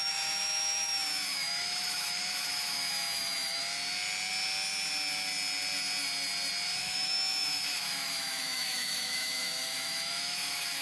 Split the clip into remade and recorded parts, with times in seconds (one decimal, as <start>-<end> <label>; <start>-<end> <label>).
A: 0.0-3.6 remade; 3.6-6.8 recorded; 6.8-10.8 remade